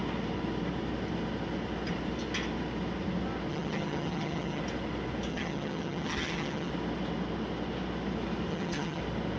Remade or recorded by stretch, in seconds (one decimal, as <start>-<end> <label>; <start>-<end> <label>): 0.0-3.5 recorded; 3.5-4.6 remade; 4.6-5.3 recorded; 5.3-6.7 remade; 6.7-8.5 recorded; 8.5-9.0 remade; 9.0-9.4 recorded